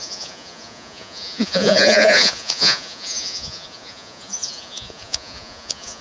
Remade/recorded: remade